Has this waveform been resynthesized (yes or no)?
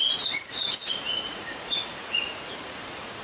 yes